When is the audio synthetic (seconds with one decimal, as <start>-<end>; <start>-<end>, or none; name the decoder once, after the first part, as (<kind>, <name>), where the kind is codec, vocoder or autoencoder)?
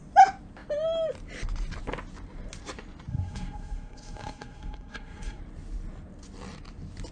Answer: 3.1-5.4 (codec, SNAC)